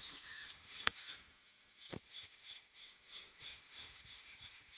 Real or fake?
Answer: fake